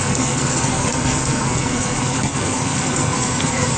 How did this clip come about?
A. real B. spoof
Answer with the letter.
B